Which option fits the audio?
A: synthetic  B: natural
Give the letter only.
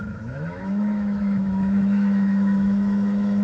A